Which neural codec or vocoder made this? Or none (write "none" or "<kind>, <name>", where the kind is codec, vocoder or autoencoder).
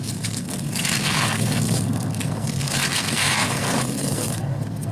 codec, SNAC